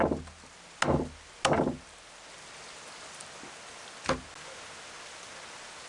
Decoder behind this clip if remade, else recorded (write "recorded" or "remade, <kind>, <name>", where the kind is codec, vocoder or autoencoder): recorded